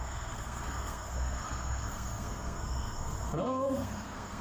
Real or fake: fake